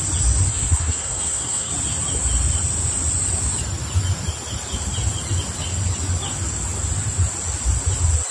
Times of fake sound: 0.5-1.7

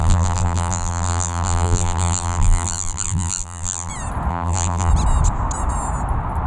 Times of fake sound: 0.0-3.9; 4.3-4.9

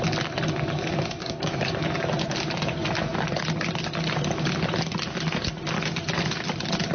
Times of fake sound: 1.2-1.7

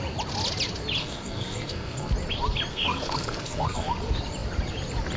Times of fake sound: 1.0-2.1; 2.7-3.9

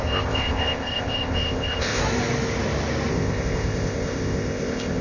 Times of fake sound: 0.0-2.0; 3.1-5.0